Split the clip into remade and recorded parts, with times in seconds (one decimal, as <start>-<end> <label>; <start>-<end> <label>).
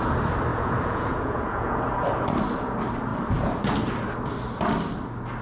0.0-0.5 recorded; 0.5-1.8 remade; 1.8-5.4 recorded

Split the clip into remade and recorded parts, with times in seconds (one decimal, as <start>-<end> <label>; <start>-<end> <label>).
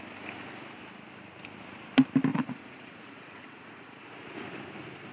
0.0-2.3 recorded; 2.3-4.1 remade; 4.1-5.1 recorded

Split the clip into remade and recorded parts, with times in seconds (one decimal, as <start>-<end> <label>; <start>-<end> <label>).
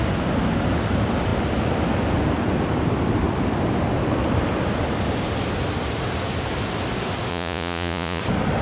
0.0-7.3 recorded; 7.3-8.2 remade; 8.2-8.6 recorded